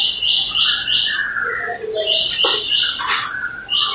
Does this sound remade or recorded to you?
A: recorded